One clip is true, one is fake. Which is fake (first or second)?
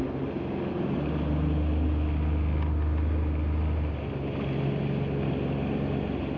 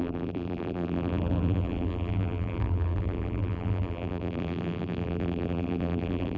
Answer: second